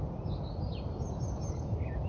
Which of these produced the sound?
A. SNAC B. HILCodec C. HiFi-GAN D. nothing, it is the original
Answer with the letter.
D